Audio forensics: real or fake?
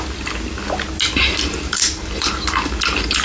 real